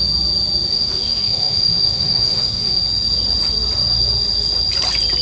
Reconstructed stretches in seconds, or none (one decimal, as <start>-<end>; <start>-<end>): 0.7-2.8